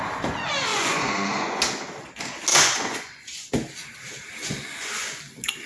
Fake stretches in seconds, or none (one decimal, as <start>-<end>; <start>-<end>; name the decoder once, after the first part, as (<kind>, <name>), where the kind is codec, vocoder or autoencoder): 0.7-1.6 (vocoder, Vocos); 2.5-3.5; 4.4-5.2